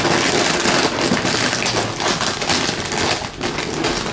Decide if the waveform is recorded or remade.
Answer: recorded